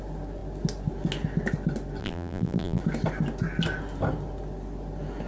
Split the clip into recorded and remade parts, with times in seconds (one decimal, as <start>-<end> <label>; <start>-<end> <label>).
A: 0.0-2.0 recorded; 2.0-2.8 remade; 2.8-5.3 recorded